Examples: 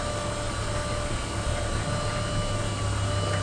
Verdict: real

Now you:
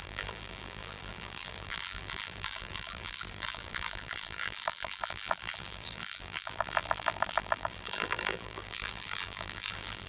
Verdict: fake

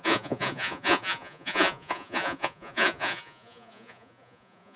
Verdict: fake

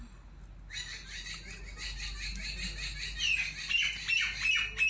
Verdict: real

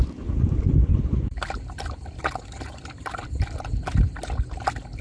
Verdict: real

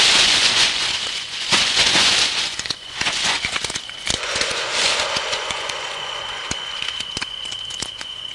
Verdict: fake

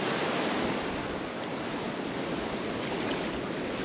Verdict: real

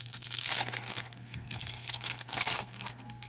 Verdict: fake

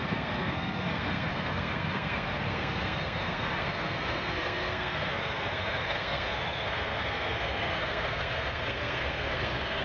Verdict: fake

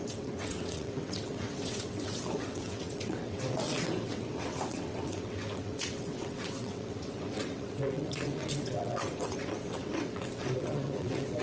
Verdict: fake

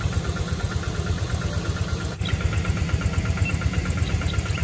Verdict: real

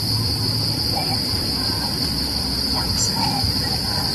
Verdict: real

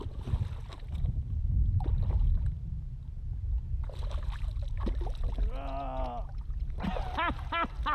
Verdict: real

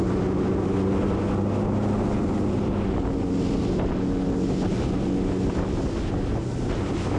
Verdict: real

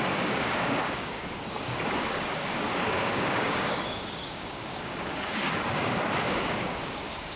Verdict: fake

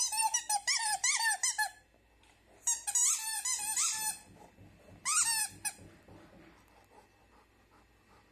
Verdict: real